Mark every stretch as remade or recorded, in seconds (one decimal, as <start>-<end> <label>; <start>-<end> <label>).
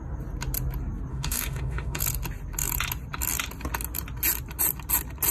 0.0-1.1 recorded; 1.1-2.0 remade; 2.0-5.3 recorded